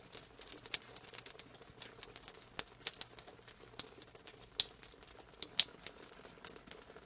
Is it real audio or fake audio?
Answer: real